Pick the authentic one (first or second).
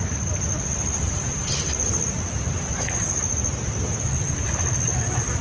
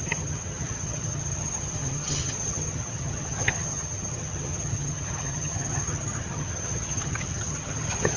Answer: first